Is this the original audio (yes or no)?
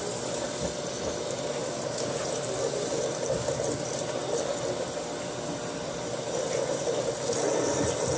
yes